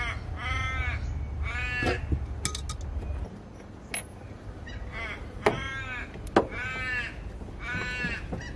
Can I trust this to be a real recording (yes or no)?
yes